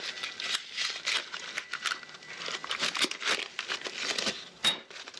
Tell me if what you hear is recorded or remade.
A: recorded